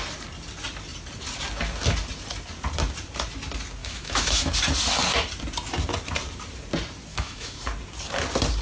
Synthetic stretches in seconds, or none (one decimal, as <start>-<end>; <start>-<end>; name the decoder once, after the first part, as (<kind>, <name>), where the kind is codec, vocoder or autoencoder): 3.8-4.5 (autoencoder, DAC-VAE); 7.1-7.6